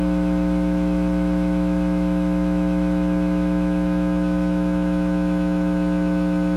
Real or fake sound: fake